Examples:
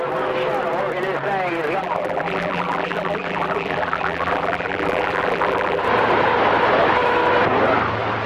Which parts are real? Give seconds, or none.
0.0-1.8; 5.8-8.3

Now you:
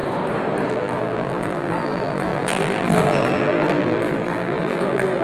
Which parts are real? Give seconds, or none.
0.0-0.7